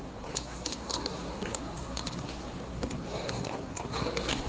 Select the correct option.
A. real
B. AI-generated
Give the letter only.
B